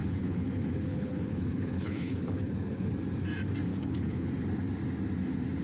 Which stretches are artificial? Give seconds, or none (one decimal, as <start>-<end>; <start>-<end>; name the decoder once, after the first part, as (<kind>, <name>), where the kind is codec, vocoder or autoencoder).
0.0-2.9 (codec, HILCodec); 3.7-4.3